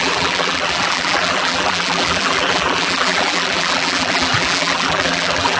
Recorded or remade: remade